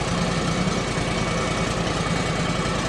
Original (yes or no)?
yes